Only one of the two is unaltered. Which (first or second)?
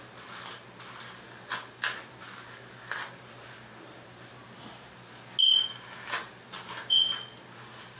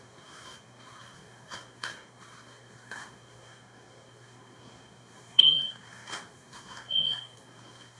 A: first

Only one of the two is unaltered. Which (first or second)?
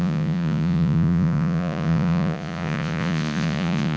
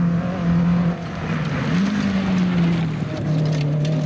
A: second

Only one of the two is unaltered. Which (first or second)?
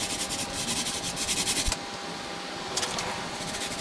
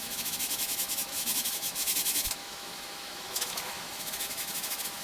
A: first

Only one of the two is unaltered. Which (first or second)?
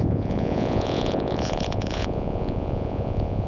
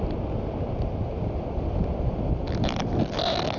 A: second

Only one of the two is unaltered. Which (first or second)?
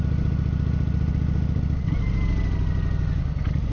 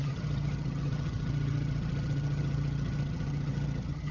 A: first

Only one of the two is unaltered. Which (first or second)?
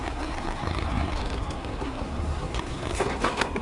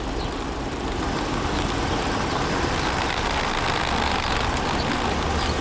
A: second